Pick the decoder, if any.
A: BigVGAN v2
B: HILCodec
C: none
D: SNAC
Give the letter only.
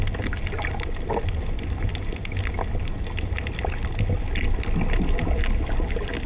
C